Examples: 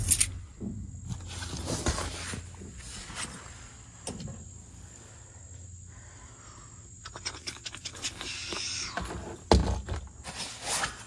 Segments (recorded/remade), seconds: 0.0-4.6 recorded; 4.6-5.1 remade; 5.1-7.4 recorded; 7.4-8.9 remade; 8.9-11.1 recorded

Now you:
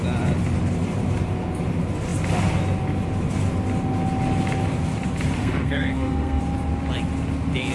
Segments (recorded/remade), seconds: 0.0-5.4 recorded; 5.4-6.4 remade; 6.4-7.7 recorded

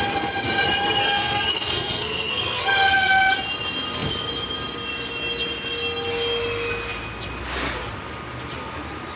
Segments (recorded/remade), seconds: 0.0-1.0 recorded; 1.0-3.3 remade; 3.3-9.2 recorded

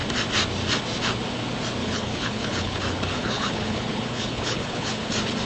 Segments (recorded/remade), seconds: 0.0-1.8 recorded; 1.8-5.1 remade; 5.1-5.5 recorded

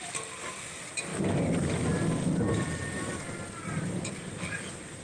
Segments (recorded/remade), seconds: 0.0-5.0 recorded

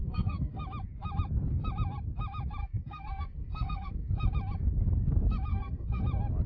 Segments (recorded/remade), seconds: 0.0-0.6 remade; 0.6-2.6 recorded; 2.6-4.1 remade; 4.1-5.5 recorded; 5.5-6.0 remade; 6.0-6.5 recorded

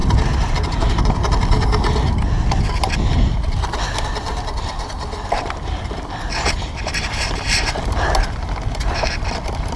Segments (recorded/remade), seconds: 0.0-9.8 recorded